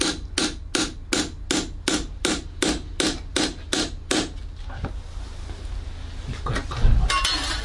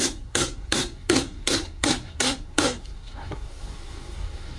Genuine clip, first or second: first